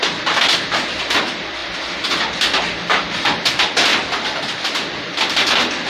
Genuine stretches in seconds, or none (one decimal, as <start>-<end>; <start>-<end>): 0.0-5.9